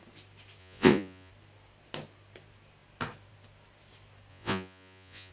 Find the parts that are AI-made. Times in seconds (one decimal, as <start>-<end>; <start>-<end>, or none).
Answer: 0.6-1.3; 4.3-5.3